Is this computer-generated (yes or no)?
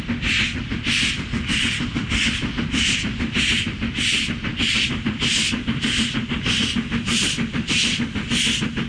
no